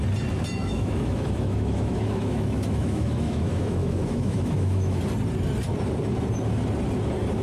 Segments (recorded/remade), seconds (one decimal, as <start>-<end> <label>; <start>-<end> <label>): 0.0-0.6 recorded; 0.6-5.0 remade; 5.0-7.4 recorded